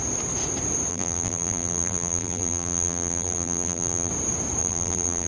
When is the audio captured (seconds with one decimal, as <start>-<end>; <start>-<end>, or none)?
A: 0.0-0.9; 4.1-4.6